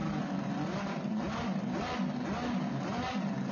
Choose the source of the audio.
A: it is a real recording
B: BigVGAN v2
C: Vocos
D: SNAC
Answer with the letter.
A